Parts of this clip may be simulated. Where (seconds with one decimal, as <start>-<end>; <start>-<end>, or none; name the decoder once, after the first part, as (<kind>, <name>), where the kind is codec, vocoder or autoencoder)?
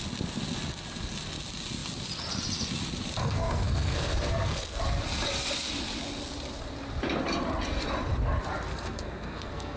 3.2-4.8 (codec, SNAC); 8.7-9.8